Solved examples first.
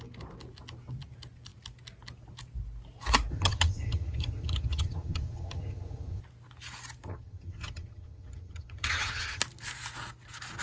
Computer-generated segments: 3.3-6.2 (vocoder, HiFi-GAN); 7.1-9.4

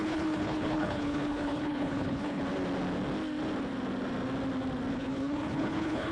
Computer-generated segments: 0.0-2.4 (codec, HILCodec); 4.9-6.1

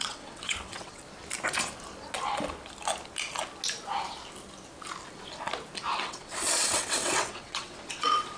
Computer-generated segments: 0.0-1.0 (vocoder, WaveNeXt); 6.0-8.4

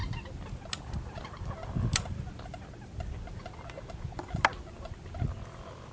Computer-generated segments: none